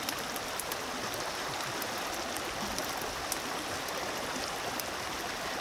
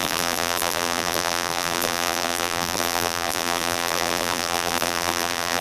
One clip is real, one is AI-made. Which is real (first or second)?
first